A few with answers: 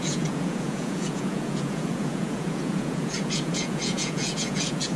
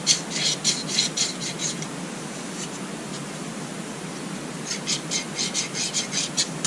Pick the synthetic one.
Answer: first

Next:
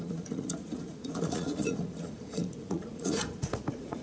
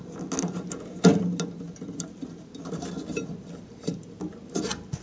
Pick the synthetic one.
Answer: first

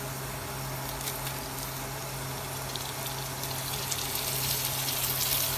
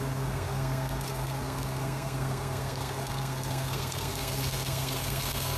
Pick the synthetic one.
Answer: second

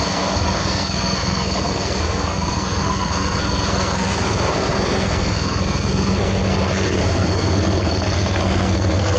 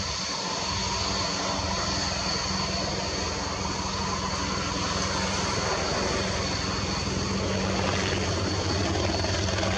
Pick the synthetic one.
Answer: first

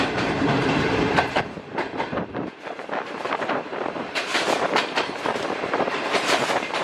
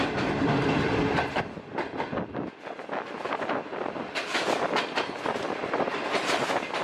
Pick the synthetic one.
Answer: first